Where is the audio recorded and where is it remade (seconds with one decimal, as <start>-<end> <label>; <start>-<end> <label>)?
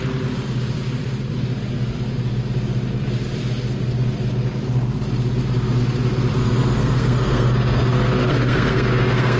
0.0-6.4 recorded; 6.4-9.4 remade